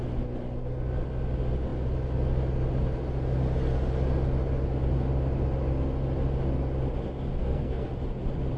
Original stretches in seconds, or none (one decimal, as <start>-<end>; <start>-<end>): 0.0-7.4; 7.9-8.6